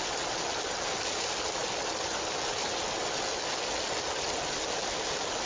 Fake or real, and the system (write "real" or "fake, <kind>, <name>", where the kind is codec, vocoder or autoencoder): real